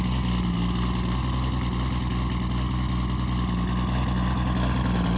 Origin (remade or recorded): recorded